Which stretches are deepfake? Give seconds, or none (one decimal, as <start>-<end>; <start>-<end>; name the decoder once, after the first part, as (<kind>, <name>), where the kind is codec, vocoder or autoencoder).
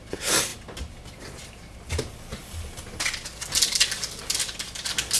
none